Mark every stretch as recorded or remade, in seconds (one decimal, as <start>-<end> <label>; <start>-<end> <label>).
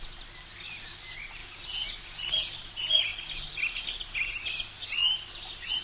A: 0.0-5.8 recorded